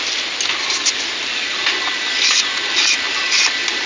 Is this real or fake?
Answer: real